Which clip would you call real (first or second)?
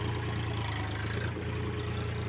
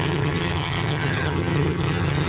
first